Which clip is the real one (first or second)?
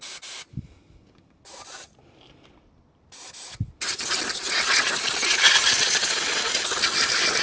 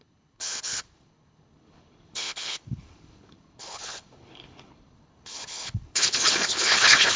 first